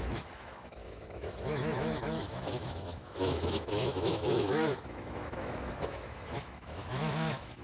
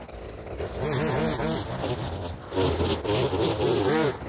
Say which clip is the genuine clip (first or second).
second